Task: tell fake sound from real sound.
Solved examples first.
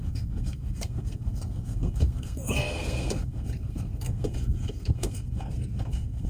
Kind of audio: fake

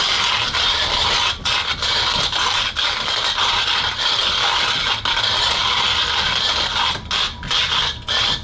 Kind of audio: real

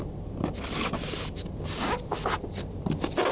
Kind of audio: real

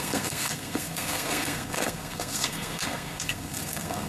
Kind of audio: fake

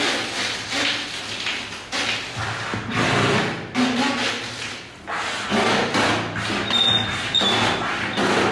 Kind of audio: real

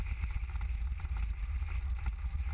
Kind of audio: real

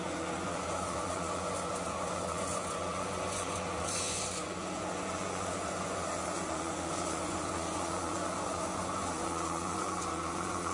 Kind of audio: fake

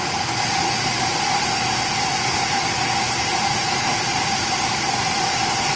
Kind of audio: real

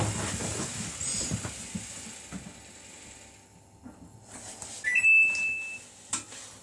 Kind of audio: real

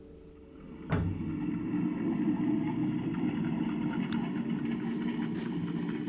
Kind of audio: real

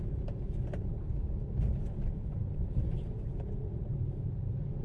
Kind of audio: fake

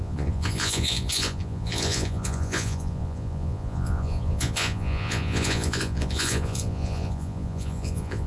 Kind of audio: fake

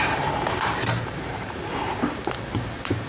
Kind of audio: fake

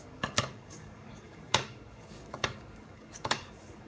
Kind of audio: fake